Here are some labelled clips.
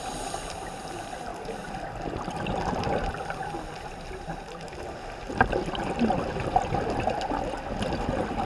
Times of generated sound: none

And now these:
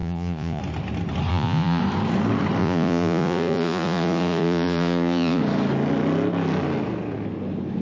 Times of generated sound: 0.0-0.6 (vocoder, Vocos); 1.3-1.8; 2.6-5.4

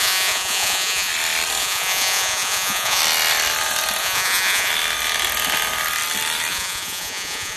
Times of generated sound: 0.0-1.1 (vocoder, Vocos); 1.6-3.0; 4.0-4.7; 6.5-7.6

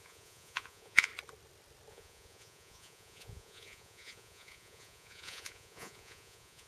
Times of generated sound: 0.0-1.1 (vocoder, Vocos); 1.9-6.7

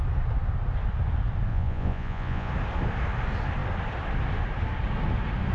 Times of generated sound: 1.5-2.5 (vocoder, Vocos)